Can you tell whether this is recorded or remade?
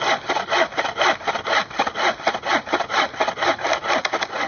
recorded